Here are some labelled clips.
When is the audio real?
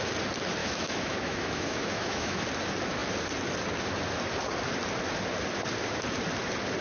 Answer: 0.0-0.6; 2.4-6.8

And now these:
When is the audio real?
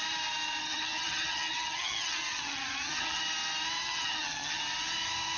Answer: 0.0-0.6; 3.2-3.8; 4.6-5.4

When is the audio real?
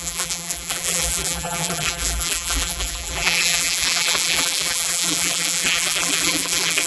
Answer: none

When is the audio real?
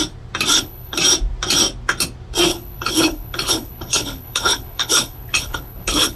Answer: 0.0-0.5; 1.0-2.5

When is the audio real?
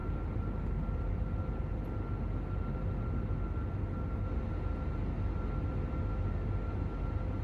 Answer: 0.0-7.4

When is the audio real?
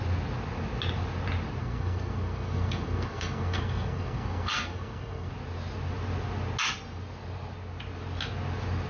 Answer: 0.0-1.6; 5.3-8.9